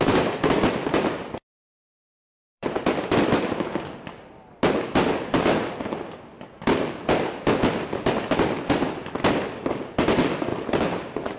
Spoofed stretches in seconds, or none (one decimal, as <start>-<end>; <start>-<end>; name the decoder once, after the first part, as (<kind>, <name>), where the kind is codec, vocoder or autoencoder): 1.9-2.8 (vocoder, BigVGAN v2); 10.5-11.4